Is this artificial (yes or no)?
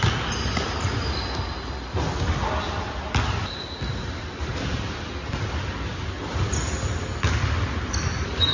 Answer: no